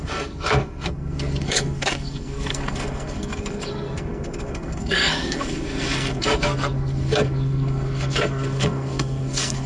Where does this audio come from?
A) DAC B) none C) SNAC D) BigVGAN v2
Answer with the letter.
C